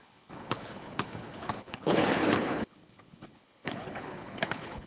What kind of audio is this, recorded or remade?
remade